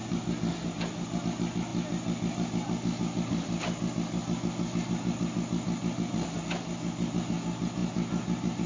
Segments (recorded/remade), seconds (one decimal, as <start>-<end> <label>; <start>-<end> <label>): 0.0-8.7 recorded